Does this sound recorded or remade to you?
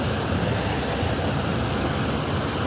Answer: recorded